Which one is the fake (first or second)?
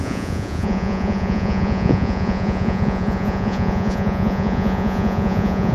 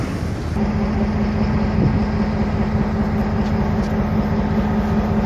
first